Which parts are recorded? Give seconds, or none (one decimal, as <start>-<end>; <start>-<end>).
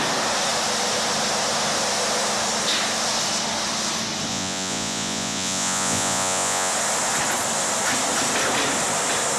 0.0-4.3; 6.7-9.4